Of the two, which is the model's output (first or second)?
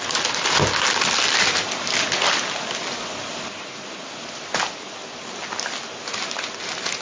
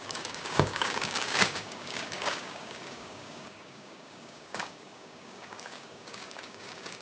second